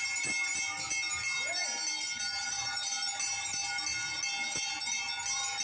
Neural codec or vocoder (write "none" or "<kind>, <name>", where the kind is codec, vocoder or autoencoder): none